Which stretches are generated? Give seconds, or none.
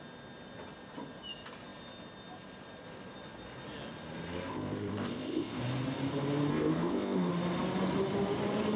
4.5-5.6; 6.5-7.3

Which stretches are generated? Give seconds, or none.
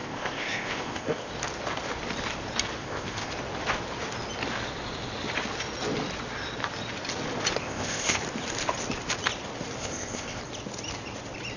0.0-1.3; 2.8-3.3; 7.6-8.2; 9.8-10.4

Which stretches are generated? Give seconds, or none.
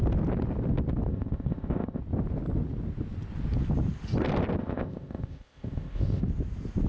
1.1-2.0; 4.6-6.2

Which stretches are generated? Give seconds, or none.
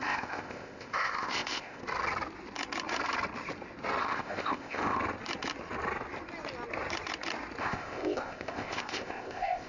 0.0-1.8; 4.0-5.0; 7.6-9.7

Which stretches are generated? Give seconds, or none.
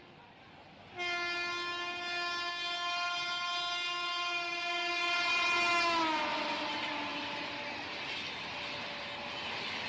none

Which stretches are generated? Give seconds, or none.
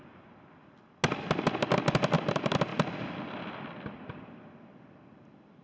none